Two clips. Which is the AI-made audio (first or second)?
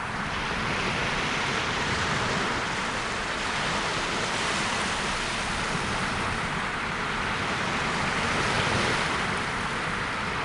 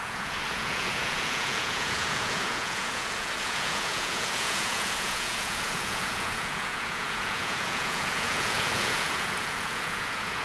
second